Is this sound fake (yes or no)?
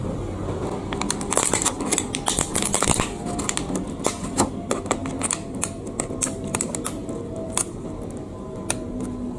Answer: no